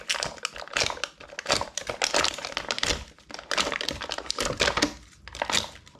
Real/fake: real